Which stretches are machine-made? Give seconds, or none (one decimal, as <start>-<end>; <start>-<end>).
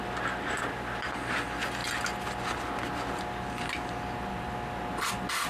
none